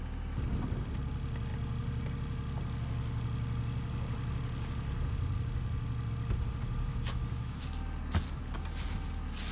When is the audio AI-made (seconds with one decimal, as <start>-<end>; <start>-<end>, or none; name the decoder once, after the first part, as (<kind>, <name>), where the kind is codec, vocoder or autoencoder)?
6.9-7.6 (autoencoder, DAC-VAE)